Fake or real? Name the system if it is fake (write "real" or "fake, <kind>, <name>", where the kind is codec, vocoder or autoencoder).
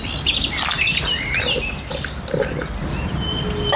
real